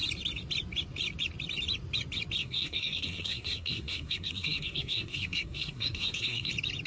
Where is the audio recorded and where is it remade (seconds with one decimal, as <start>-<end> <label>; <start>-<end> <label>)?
0.0-2.4 recorded; 2.4-6.5 remade; 6.5-6.9 recorded